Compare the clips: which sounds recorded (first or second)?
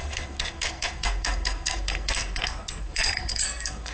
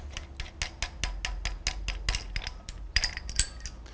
second